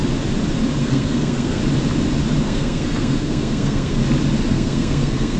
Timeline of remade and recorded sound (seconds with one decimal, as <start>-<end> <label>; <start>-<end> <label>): 0.0-0.8 recorded; 0.8-1.6 remade; 1.6-2.4 recorded; 2.4-4.0 remade; 4.0-4.5 recorded; 4.5-5.4 remade